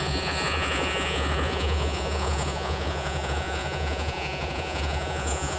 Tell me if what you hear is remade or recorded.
remade